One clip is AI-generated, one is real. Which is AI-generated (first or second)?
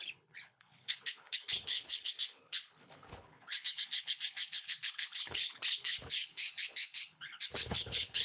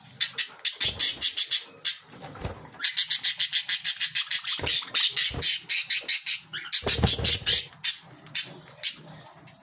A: first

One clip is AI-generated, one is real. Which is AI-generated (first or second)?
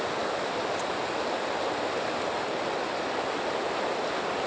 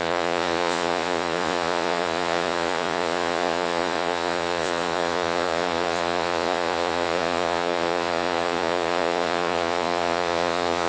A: second